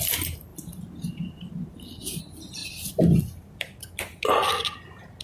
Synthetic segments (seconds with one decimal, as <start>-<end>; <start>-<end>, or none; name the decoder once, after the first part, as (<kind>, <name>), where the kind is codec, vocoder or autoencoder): 0.5-2.2 (vocoder, BigVGAN v2); 2.6-3.8